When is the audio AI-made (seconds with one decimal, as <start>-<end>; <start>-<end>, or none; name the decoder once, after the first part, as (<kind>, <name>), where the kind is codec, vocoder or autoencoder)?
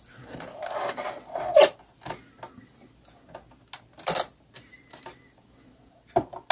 none